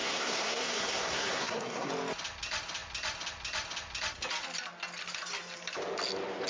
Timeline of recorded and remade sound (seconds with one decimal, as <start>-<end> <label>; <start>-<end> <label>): 0.0-1.9 remade; 1.9-6.5 recorded